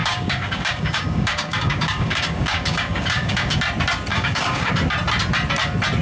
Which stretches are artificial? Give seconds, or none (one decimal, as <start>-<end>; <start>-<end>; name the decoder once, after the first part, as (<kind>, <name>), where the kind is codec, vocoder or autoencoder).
0.0-3.6 (codec, DAC); 4.1-4.7